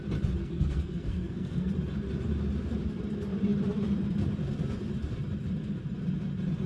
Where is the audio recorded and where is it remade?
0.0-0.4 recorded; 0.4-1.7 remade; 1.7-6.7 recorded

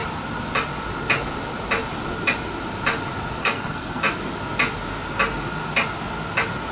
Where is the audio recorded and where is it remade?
0.0-3.4 recorded; 3.4-4.0 remade; 4.0-6.7 recorded

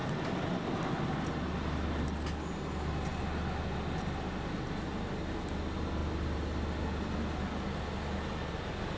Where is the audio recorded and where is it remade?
0.0-9.0 recorded

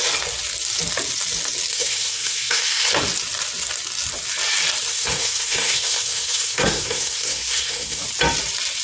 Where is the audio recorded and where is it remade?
0.0-1.7 recorded; 1.7-2.9 remade; 2.9-4.9 recorded; 4.9-8.0 remade; 8.0-8.8 recorded

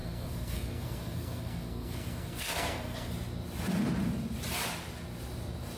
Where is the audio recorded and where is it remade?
0.0-3.1 remade; 3.1-5.8 recorded